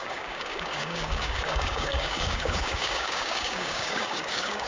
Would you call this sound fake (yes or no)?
yes